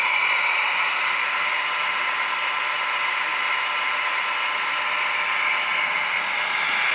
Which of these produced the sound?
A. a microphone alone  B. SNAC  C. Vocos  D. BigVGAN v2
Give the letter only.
A